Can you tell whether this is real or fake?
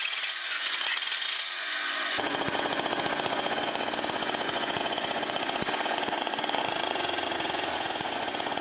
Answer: fake